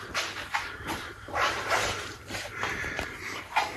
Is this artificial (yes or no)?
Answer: yes